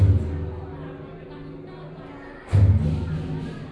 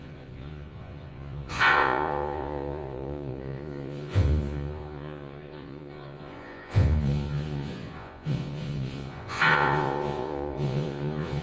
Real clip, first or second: first